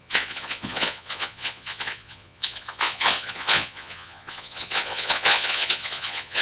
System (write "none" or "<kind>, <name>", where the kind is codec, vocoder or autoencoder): vocoder, Vocos